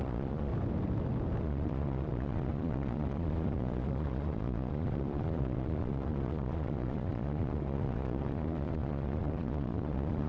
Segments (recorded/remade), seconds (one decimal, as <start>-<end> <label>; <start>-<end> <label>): 0.0-0.5 remade; 0.5-1.4 recorded; 1.4-10.3 remade